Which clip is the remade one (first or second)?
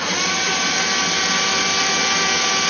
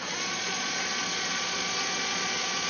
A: second